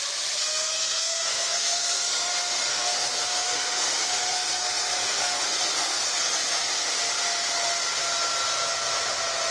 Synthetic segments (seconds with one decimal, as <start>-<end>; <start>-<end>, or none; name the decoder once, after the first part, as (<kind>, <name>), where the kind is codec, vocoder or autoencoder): 0.4-2.3 (codec, SNAC); 2.7-6.7